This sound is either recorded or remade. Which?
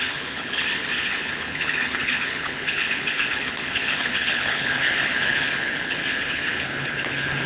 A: remade